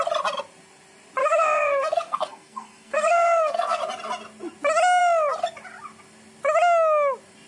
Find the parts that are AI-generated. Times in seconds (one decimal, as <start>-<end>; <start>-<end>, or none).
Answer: 1.2-3.8

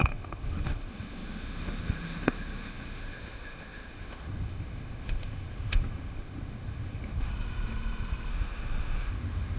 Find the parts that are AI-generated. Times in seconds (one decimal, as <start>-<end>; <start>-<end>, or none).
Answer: 0.0-7.3; 8.3-9.6